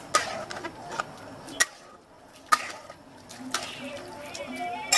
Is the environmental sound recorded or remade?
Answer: recorded